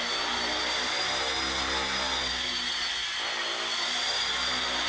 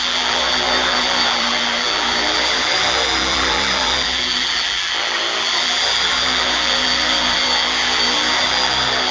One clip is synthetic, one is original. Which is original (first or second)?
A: first